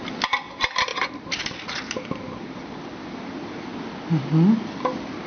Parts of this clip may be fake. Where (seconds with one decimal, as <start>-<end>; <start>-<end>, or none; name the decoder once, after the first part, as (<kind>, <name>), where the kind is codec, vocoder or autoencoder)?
none